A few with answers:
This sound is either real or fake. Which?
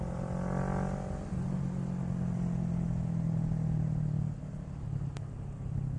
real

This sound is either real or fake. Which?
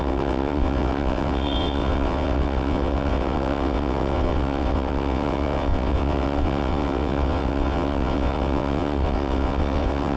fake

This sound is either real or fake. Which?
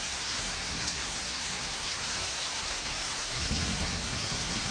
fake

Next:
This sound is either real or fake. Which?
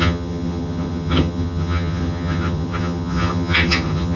fake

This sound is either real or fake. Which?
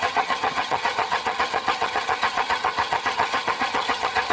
fake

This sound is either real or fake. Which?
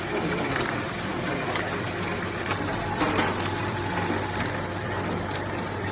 real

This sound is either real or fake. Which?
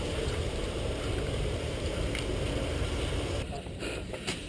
fake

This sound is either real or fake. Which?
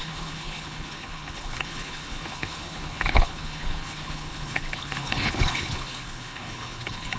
fake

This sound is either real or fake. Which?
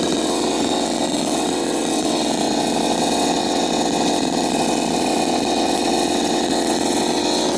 fake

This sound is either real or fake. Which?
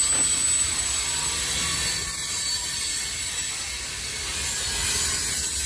real